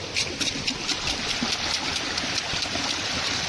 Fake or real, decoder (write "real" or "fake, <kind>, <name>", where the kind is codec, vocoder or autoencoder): real